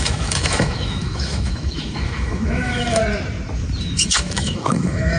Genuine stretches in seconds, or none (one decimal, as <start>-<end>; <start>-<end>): 3.0-3.8